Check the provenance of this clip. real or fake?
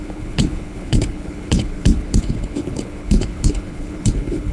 fake